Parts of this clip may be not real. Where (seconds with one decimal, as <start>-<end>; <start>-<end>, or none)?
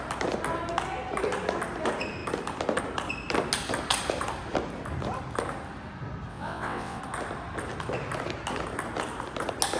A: 6.3-7.0